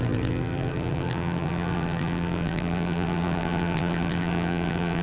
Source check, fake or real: fake